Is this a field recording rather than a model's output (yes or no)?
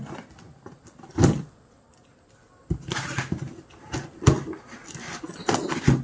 yes